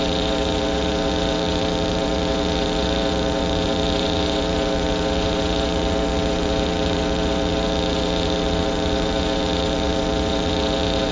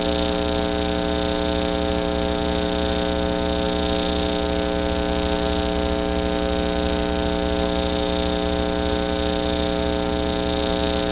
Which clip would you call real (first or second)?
second